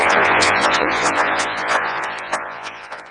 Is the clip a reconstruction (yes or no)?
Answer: yes